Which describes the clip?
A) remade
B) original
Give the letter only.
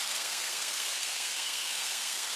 A